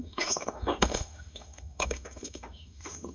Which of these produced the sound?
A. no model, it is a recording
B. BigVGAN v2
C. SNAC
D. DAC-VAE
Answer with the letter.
D